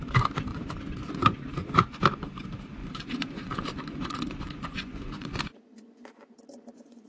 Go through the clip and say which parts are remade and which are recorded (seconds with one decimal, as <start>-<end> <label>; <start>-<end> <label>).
0.0-0.5 recorded; 0.5-1.5 remade; 1.5-2.8 recorded; 2.8-7.1 remade